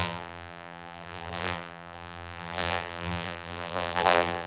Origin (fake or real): fake